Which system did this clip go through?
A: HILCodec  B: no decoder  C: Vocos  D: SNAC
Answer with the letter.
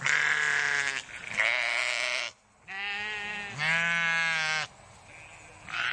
B